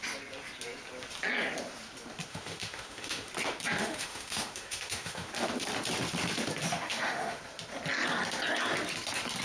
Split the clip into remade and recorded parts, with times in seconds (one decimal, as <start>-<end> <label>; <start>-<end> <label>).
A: 0.0-2.3 recorded; 2.3-3.3 remade; 3.3-3.8 recorded; 3.8-5.3 remade; 5.3-6.7 recorded; 6.7-7.4 remade; 7.4-9.4 recorded